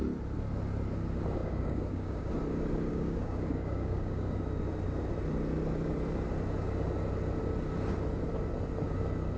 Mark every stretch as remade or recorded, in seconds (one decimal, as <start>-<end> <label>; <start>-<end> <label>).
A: 0.0-1.4 recorded; 1.4-2.3 remade; 2.3-2.9 recorded; 2.9-4.4 remade; 4.4-9.4 recorded